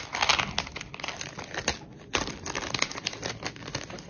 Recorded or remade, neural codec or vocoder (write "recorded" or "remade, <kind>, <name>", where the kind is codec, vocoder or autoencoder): recorded